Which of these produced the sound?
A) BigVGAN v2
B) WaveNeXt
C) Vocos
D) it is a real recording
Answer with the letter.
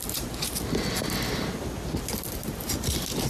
D